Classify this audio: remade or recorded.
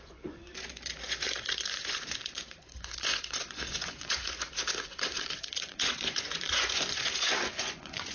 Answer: remade